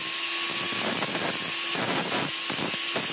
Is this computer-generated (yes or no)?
no